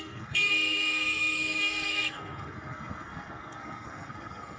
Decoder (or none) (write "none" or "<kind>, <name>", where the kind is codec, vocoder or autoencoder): codec, SNAC